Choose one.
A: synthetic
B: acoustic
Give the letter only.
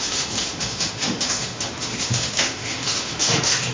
A